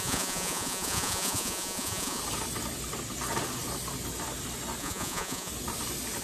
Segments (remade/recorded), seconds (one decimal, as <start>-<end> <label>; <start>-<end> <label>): 0.0-2.2 remade; 2.2-4.8 recorded; 4.8-5.5 remade; 5.5-6.2 recorded